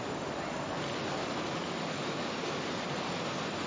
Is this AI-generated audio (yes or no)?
no